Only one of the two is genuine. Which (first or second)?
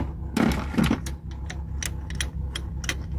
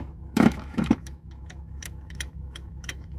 first